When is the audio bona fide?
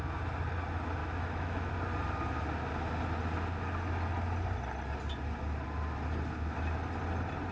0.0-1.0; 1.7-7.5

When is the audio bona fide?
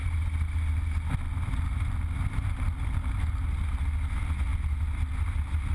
0.0-5.7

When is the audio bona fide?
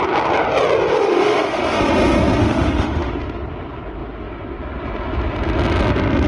0.0-0.9; 1.6-2.4; 3.1-6.3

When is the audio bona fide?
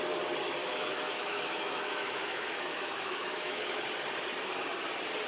0.0-0.6; 3.8-5.3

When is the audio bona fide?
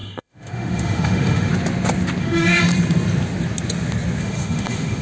1.5-2.2; 2.6-4.2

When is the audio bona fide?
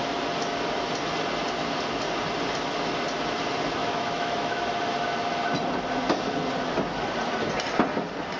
0.0-3.8; 4.6-8.4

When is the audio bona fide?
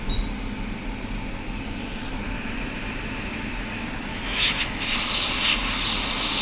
0.0-4.1; 4.8-6.4